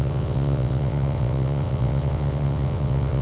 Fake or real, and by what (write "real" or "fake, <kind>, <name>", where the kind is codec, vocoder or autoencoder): fake, vocoder, WaveNeXt